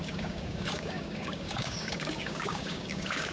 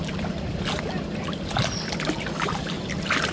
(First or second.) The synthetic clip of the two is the first